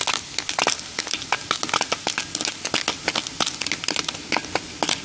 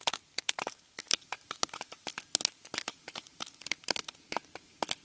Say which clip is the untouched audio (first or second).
first